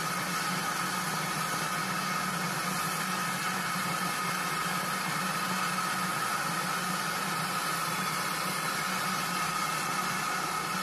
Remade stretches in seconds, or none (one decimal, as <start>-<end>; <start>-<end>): none